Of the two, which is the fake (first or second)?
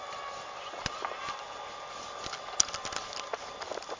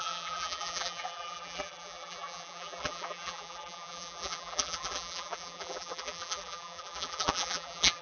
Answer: second